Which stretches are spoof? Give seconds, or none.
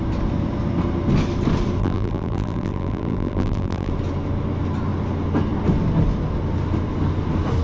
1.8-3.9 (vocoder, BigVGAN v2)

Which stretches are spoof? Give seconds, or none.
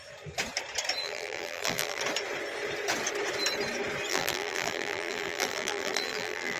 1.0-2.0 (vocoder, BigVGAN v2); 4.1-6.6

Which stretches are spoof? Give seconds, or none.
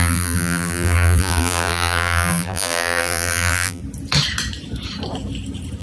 0.0-3.8 (vocoder, BigVGAN v2)